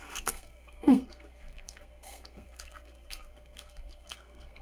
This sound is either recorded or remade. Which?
remade